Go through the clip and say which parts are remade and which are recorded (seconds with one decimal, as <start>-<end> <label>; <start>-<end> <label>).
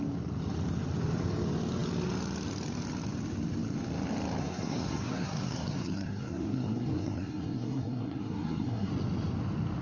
0.0-4.4 recorded; 4.4-8.9 remade; 8.9-9.8 recorded